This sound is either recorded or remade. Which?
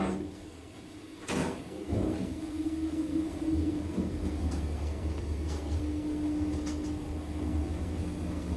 remade